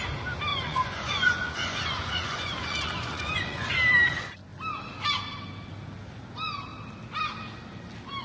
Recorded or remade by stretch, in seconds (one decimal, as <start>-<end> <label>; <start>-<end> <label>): 0.0-0.5 recorded; 0.5-3.7 remade; 3.7-8.2 recorded